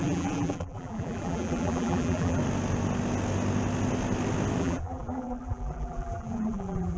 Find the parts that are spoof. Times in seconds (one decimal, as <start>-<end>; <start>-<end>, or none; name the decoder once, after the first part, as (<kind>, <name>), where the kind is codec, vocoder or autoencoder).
0.0-2.4 (vocoder, BigVGAN v2); 4.6-7.0